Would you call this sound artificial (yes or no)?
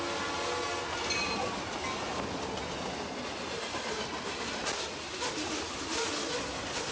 no